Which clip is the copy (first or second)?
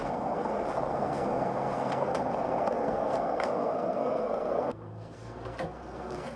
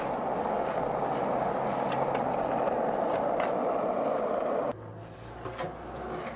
first